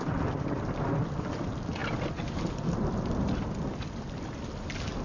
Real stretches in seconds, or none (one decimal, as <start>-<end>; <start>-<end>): 0.0-5.0